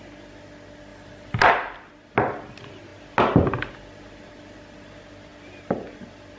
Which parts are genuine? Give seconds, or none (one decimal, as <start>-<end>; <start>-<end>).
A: 0.0-0.9; 1.5-6.4